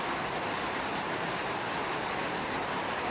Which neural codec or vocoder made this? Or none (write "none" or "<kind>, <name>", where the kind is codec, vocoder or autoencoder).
none